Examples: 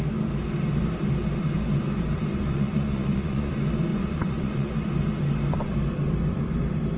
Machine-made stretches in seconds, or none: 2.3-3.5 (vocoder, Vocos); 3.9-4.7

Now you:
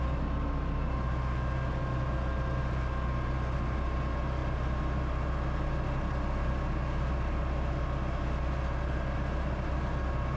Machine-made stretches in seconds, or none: none

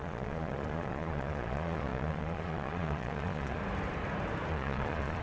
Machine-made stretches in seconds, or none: 0.0-3.6 (vocoder, Vocos); 4.5-5.2